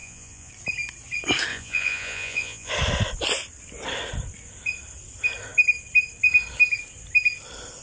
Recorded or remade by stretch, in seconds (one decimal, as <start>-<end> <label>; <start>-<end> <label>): 0.0-0.5 remade; 0.5-1.5 recorded; 1.5-2.7 remade; 2.7-7.8 recorded